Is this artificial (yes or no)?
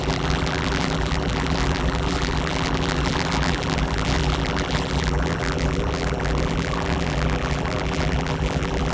yes